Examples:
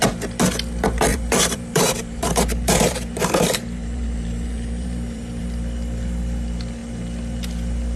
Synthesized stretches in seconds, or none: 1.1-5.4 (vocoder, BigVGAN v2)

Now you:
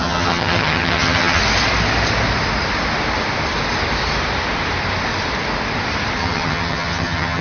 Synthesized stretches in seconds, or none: 0.0-1.4 (vocoder, HiFi-GAN); 6.2-7.4

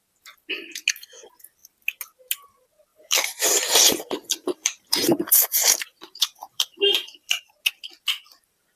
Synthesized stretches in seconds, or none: 2.9-7.5 (vocoder, BigVGAN v2)

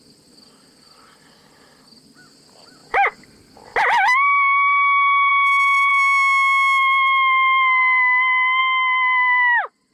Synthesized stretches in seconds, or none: none